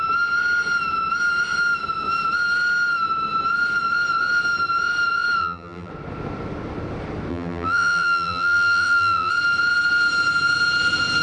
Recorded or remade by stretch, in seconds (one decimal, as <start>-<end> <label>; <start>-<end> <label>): 0.0-5.4 recorded; 5.4-5.9 remade; 5.9-7.3 recorded; 7.3-9.3 remade; 9.3-11.2 recorded